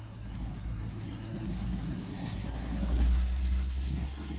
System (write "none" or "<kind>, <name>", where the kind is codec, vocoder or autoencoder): codec, SNAC